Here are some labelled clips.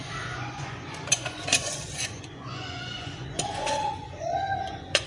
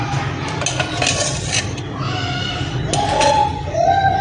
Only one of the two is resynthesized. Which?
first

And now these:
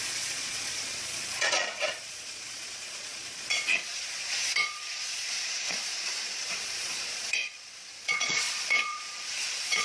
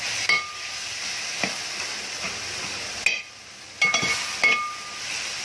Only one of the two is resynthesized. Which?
first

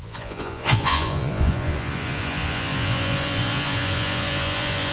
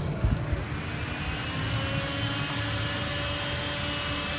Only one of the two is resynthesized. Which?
first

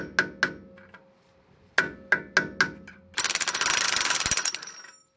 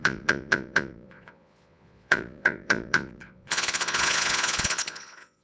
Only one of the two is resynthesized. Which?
second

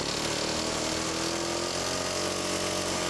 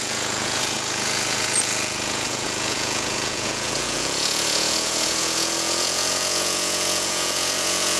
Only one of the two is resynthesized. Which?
second